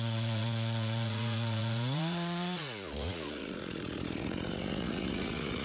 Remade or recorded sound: remade